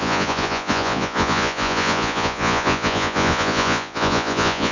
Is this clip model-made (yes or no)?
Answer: yes